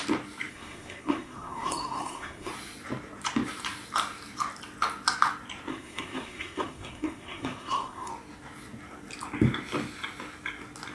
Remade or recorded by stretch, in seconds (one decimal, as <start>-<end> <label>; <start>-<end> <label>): 0.0-0.5 recorded; 0.5-2.5 remade; 2.5-5.7 recorded; 5.7-8.1 remade; 8.1-10.9 recorded